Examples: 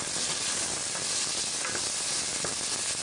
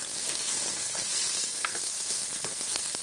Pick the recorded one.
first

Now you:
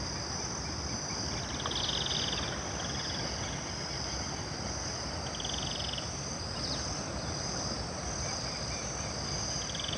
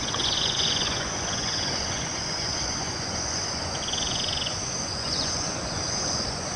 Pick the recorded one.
first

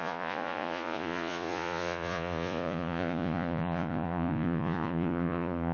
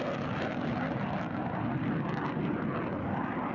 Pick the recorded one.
second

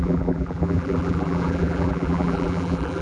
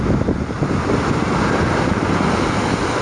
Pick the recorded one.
second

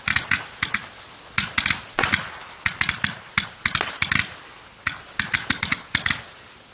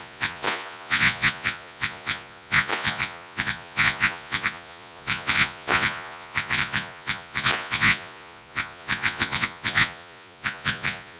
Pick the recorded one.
first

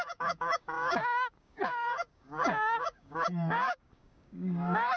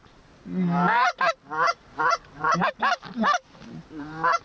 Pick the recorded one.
second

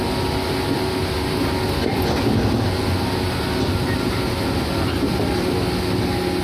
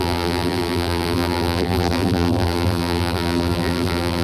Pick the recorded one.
first